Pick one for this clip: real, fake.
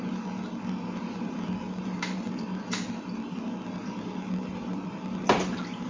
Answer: real